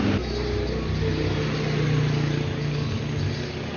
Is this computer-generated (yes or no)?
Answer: no